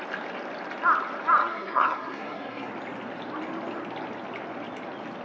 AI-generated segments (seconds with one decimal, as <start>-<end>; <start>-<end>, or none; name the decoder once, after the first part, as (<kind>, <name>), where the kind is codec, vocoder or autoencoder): 1.4-2.7 (codec, SNAC)